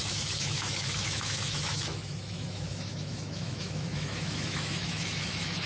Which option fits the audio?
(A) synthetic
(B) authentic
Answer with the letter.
A